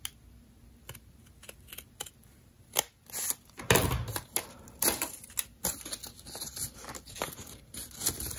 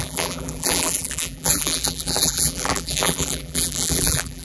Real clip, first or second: first